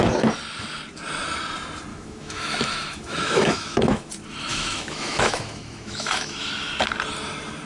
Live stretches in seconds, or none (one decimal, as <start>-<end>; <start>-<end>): 0.0-1.9; 4.1-4.5; 6.5-7.7